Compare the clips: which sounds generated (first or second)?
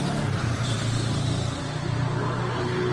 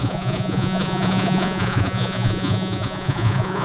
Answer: second